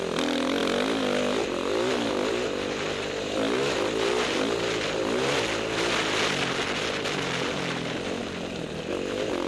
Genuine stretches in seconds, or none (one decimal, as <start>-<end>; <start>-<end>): 0.0-9.5